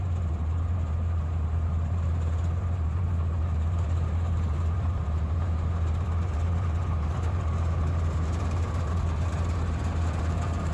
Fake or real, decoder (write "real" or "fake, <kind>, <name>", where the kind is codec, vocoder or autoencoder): fake, vocoder, BigVGAN v2